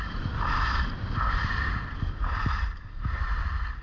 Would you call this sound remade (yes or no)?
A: no